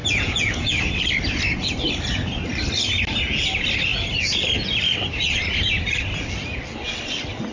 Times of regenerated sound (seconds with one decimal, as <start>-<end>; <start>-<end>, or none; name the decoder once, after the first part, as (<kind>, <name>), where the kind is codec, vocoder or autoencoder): 0.0-0.8 (vocoder, Vocos)